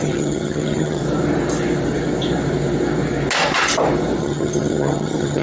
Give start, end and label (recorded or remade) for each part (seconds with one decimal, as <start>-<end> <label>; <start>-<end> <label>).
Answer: 0.0-1.0 remade; 1.0-4.2 recorded; 4.2-5.4 remade